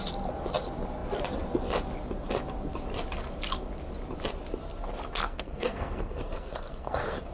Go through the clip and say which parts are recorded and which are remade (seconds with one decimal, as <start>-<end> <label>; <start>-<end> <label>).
0.0-5.2 recorded; 5.2-7.3 remade